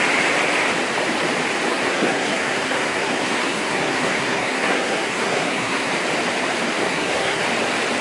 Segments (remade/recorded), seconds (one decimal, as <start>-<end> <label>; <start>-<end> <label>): 0.0-1.7 recorded; 1.7-5.9 remade; 5.9-6.8 recorded; 6.8-7.4 remade; 7.4-8.0 recorded